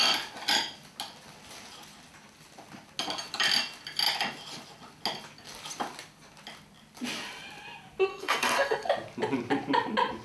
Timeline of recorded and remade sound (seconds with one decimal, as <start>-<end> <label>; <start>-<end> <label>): 0.0-8.1 recorded; 8.1-8.9 remade; 8.9-10.2 recorded